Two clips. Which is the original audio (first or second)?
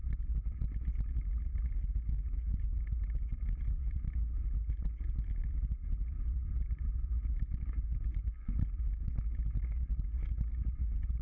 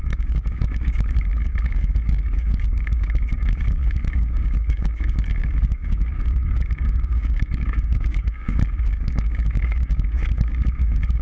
first